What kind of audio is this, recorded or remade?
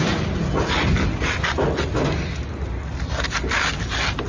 recorded